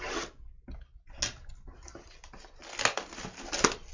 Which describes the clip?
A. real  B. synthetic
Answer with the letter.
A